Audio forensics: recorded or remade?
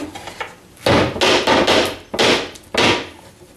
recorded